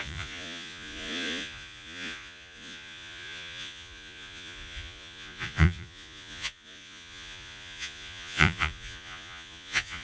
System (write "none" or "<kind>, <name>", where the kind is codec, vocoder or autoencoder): vocoder, Vocos